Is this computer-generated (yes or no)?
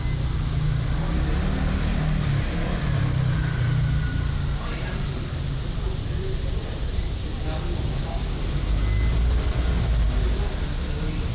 no